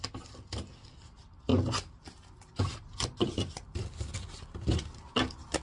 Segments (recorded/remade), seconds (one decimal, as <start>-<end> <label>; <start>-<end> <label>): 0.0-5.6 recorded

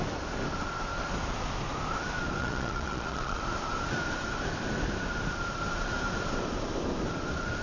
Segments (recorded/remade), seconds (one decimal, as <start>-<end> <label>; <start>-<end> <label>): 0.0-2.4 recorded; 2.4-3.4 remade; 3.4-7.6 recorded

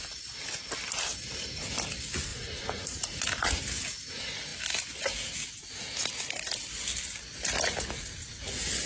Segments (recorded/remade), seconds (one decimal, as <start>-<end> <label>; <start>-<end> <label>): 0.0-2.3 recorded; 2.3-3.2 remade; 3.2-8.9 recorded

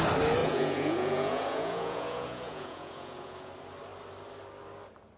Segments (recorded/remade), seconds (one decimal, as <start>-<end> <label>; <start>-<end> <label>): 0.0-0.4 recorded; 0.4-3.5 remade; 3.5-5.2 recorded

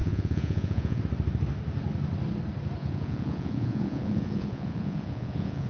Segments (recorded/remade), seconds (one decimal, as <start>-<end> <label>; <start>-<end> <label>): 0.0-1.0 remade; 1.0-2.8 recorded; 2.8-5.7 remade

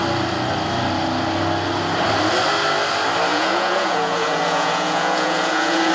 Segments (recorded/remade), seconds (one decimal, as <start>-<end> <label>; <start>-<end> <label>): 0.0-3.3 recorded; 3.3-5.9 remade

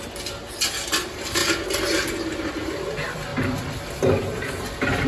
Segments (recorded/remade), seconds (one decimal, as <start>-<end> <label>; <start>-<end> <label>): 0.0-5.1 recorded